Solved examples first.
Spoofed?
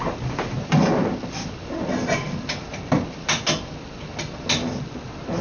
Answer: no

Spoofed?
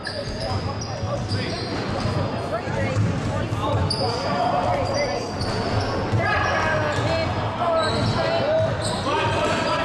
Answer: no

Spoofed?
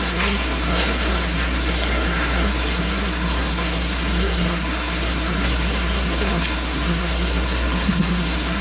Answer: yes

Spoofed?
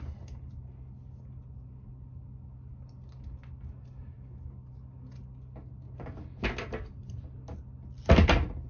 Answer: no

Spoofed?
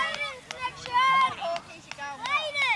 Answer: no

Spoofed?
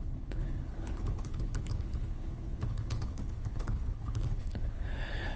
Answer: yes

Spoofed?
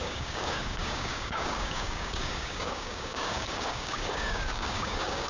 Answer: yes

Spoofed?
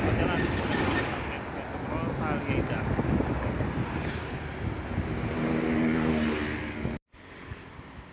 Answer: no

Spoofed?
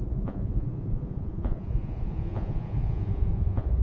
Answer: yes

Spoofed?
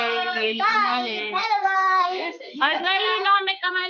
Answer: yes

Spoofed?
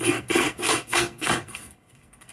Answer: yes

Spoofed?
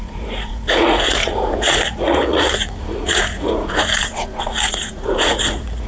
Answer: yes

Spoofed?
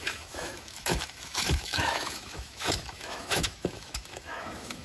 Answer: yes